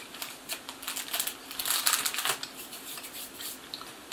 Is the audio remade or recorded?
recorded